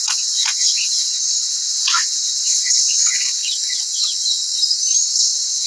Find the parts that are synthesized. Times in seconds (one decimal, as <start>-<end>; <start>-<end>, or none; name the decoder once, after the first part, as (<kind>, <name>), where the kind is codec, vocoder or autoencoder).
0.0-3.4 (vocoder, WaveNeXt); 5.0-5.7